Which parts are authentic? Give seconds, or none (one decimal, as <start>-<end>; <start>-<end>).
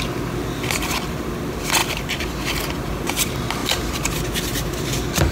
0.0-1.8; 2.5-3.6